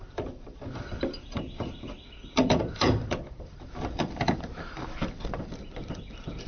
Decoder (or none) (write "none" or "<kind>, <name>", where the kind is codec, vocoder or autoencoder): vocoder, BigVGAN v2